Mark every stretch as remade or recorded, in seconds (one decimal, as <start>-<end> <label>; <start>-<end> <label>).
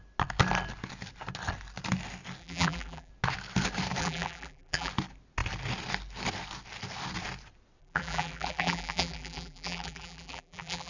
0.0-2.4 recorded; 2.4-3.1 remade; 3.1-4.0 recorded; 4.0-4.9 remade; 4.9-7.8 recorded; 7.8-10.9 remade